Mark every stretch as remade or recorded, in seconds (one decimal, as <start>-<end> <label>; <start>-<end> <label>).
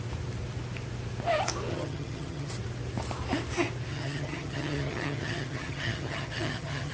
0.0-1.7 recorded; 1.7-2.5 remade; 2.5-3.9 recorded; 3.9-6.9 remade